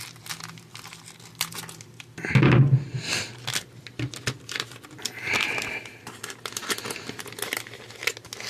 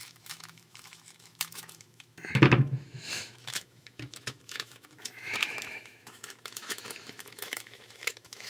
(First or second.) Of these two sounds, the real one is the first